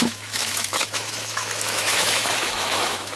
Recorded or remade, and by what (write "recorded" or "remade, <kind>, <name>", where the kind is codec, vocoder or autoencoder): remade, autoencoder, DAC-VAE